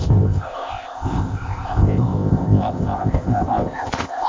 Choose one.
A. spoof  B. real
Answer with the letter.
A